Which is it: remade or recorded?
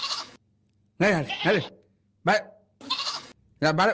recorded